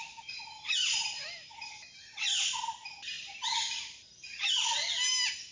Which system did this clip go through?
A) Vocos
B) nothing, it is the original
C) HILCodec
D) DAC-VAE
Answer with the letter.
B